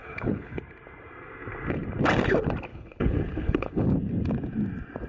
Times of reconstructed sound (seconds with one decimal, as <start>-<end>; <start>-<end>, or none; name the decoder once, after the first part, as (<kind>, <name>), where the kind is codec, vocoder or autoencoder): 0.0-0.6 (codec, HILCodec); 2.7-3.9